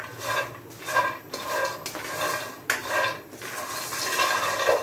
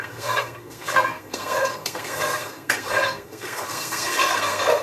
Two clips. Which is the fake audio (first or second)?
second